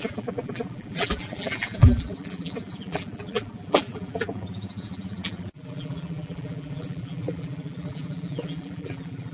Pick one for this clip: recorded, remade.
remade